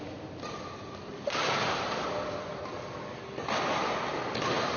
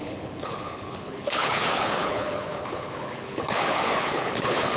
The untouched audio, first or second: first